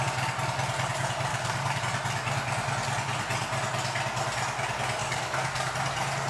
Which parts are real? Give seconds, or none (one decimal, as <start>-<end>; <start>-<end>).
0.0-1.3; 1.8-5.0; 5.7-6.3